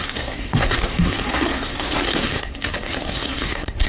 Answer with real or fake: fake